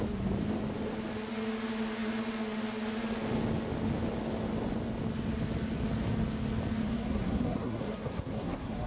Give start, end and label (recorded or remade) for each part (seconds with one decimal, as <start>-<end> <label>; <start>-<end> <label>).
0.0-6.8 recorded; 6.8-8.9 remade